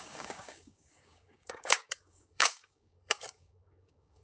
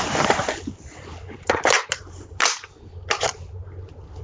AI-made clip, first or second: first